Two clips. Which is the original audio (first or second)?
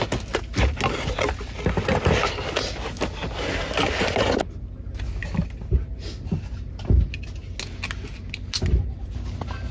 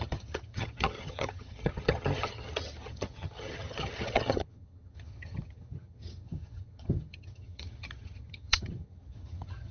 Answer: first